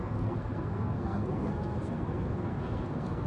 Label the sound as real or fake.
fake